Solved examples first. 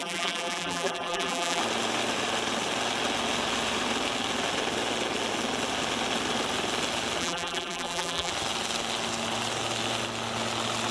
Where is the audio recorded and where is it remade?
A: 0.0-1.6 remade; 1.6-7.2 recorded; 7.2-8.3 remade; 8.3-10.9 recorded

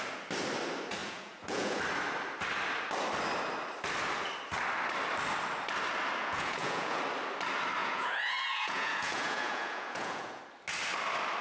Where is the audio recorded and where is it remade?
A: 0.0-1.0 recorded; 1.0-1.8 remade; 1.8-6.2 recorded; 6.2-7.0 remade; 7.0-7.8 recorded; 7.8-10.4 remade; 10.4-11.4 recorded

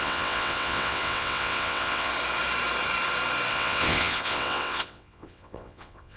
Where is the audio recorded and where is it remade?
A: 0.0-2.1 remade; 2.1-3.5 recorded; 3.5-6.2 remade

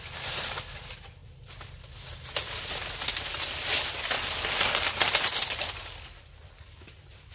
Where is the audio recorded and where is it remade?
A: 0.0-7.3 recorded

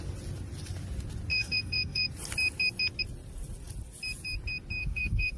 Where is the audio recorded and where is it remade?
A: 0.0-1.3 recorded; 1.3-2.1 remade; 2.1-4.8 recorded; 4.8-5.4 remade

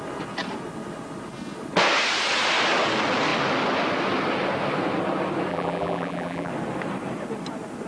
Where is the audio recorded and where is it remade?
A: 0.0-5.5 recorded; 5.5-6.5 remade; 6.5-7.9 recorded